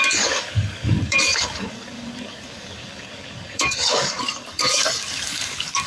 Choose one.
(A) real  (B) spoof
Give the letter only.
B